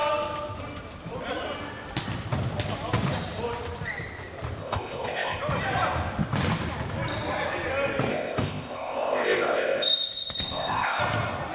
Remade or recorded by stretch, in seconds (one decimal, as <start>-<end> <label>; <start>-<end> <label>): 0.0-4.6 recorded; 4.6-5.4 remade; 5.4-8.1 recorded; 8.1-11.0 remade; 11.0-11.5 recorded